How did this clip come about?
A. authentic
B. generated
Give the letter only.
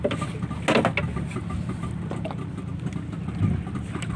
A